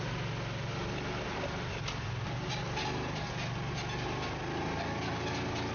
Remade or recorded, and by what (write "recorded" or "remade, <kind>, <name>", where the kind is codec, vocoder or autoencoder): recorded